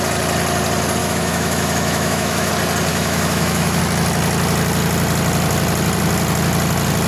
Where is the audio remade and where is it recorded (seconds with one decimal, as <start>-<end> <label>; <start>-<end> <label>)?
0.0-1.0 recorded; 1.0-2.5 remade; 2.5-2.9 recorded; 2.9-3.8 remade; 3.8-7.1 recorded